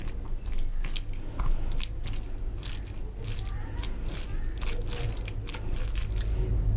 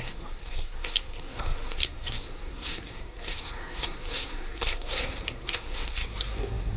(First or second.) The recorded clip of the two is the first